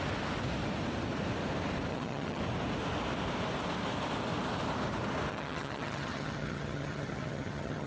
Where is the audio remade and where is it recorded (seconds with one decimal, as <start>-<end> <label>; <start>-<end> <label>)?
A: 0.0-1.9 recorded; 1.9-2.4 remade; 2.4-5.3 recorded; 5.3-7.9 remade